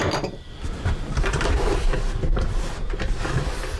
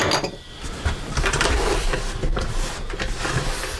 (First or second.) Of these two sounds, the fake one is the first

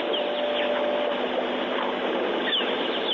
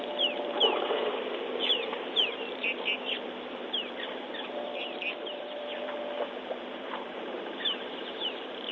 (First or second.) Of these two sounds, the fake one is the second